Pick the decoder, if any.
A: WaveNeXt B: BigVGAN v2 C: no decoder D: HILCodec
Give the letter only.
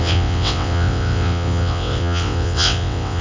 A